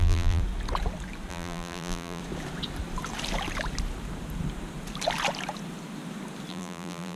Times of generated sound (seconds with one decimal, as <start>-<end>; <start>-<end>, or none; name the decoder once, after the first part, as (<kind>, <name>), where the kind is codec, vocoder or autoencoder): 0.0-0.4 (vocoder, BigVGAN v2); 1.3-2.2; 6.5-7.2